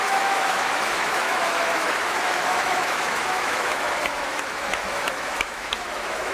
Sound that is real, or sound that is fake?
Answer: fake